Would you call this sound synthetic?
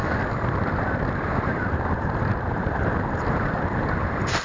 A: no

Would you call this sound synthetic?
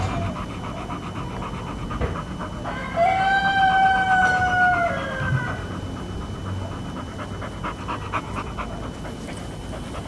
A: no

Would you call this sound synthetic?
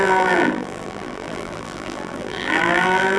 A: yes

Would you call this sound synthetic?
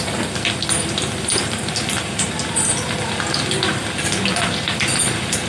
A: yes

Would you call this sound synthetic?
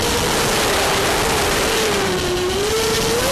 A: no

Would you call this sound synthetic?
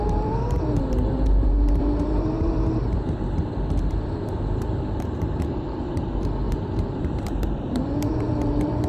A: yes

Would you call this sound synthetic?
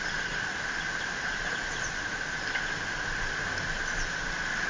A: no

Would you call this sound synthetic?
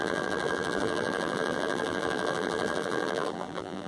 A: yes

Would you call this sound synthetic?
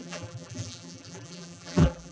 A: yes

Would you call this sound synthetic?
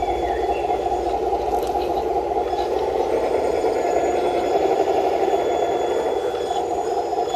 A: yes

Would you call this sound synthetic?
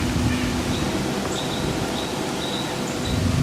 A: no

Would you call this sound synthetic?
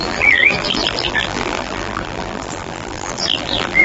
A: yes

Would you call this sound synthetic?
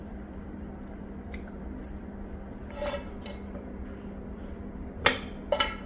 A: yes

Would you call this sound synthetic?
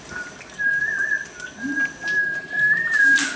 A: yes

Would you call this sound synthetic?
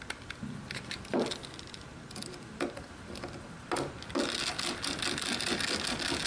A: no